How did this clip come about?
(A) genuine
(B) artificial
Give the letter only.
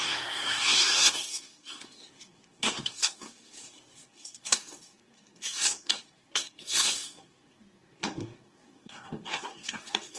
B